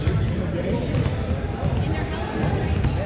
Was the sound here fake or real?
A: real